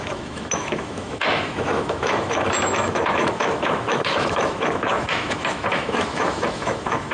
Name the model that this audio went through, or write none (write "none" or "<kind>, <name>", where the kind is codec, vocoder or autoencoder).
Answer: autoencoder, DAC-VAE